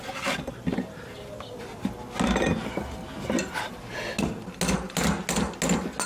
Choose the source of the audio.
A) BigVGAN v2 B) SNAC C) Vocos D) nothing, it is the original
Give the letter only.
D